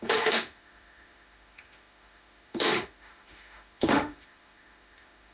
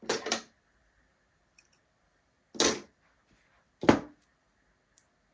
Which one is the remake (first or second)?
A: first